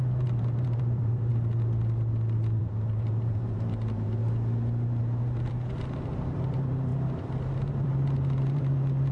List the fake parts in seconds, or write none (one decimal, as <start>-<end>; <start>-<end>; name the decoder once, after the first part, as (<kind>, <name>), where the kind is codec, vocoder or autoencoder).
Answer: 0.0-1.3 (vocoder, BigVGAN v2); 2.6-4.2; 5.0-9.1